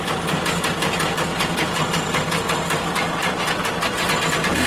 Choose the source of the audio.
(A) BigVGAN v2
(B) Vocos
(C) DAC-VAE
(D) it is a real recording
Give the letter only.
D